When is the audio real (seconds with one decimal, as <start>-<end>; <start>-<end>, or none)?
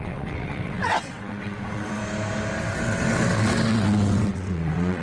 2.0-2.6